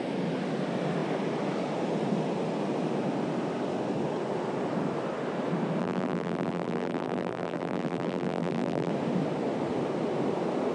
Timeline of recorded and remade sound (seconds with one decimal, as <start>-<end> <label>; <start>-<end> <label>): 0.0-5.8 recorded; 5.8-8.9 remade; 8.9-10.7 recorded